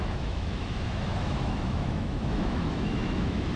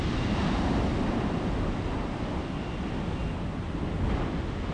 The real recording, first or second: second